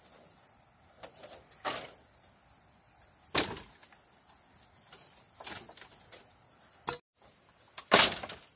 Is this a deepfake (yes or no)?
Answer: no